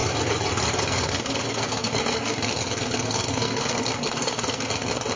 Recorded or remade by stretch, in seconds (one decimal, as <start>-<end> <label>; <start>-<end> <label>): 0.0-0.8 recorded; 0.8-5.2 remade